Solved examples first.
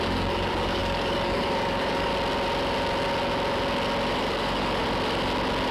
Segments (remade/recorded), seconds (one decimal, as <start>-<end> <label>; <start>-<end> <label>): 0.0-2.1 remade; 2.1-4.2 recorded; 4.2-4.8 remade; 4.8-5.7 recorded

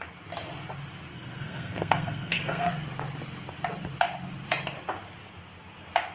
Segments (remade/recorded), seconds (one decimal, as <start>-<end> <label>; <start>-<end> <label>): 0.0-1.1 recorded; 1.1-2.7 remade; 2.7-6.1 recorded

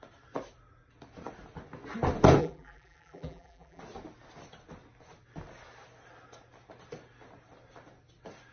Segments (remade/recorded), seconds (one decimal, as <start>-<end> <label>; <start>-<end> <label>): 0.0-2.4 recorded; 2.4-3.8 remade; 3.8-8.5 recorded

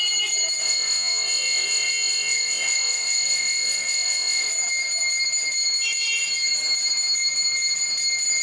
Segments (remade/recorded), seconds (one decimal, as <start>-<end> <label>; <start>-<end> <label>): 0.0-0.6 recorded; 0.6-4.5 remade; 4.5-8.4 recorded

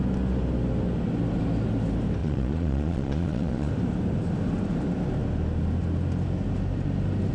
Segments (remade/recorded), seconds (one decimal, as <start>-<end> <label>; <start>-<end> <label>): 0.0-2.2 recorded; 2.2-3.7 remade; 3.7-7.3 recorded

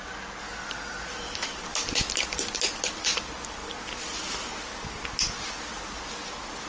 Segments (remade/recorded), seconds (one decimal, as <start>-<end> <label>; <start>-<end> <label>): 0.0-1.7 remade; 1.7-2.9 recorded; 2.9-3.6 remade; 3.6-6.3 recorded; 6.3-6.7 remade

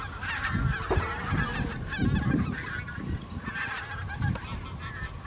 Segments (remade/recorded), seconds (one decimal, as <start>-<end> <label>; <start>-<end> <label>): 0.0-5.3 recorded